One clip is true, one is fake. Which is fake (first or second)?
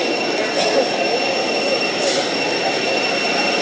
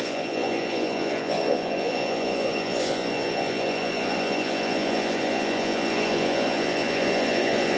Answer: second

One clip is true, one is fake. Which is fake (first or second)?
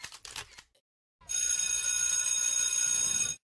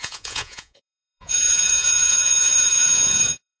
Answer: second